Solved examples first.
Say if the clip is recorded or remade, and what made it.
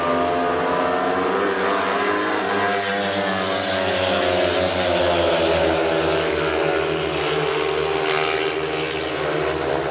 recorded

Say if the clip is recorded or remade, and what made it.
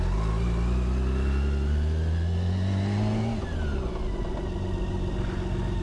recorded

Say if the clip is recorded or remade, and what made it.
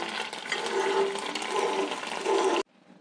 recorded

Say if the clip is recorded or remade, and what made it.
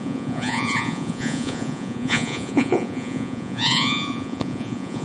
remade, vocoder, Vocos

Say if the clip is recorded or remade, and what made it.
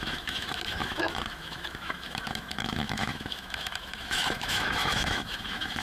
remade, autoencoder, DAC-VAE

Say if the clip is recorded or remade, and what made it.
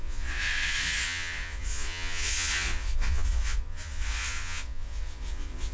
remade, vocoder, Vocos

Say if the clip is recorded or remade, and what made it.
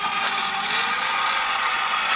remade, vocoder, Vocos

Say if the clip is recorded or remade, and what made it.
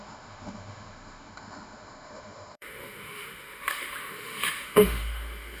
remade, autoencoder, DAC-VAE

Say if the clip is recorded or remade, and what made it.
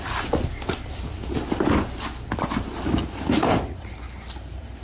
recorded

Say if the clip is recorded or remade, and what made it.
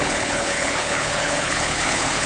remade, codec, HILCodec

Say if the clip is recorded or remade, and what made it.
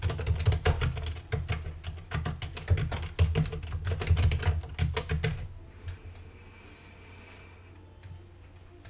recorded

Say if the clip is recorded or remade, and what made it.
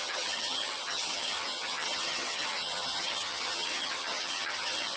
remade, vocoder, HiFi-GAN